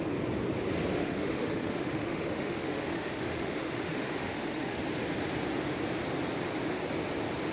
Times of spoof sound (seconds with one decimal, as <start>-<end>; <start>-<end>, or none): 0.9-4.8